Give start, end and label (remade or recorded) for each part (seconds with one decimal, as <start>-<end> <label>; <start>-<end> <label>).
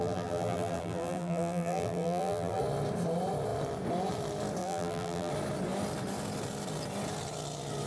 0.0-2.6 remade; 2.6-4.6 recorded; 4.6-5.3 remade; 5.3-7.9 recorded